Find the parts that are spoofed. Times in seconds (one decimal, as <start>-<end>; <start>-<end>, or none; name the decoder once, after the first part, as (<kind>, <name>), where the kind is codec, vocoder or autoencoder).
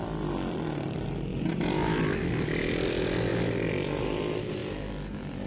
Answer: 1.3-2.0 (vocoder, BigVGAN v2)